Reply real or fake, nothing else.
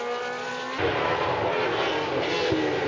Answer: real